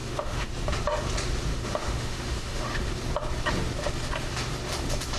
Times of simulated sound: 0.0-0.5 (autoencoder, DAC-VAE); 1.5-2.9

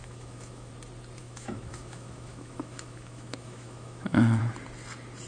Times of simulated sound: 0.0-0.7 (autoencoder, DAC-VAE); 1.2-4.4

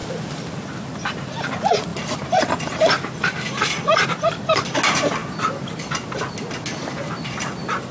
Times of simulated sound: none

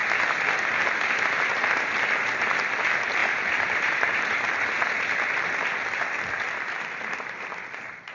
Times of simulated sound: 3.2-4.5 (vocoder, BigVGAN v2)